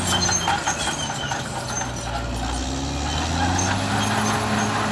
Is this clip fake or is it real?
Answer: real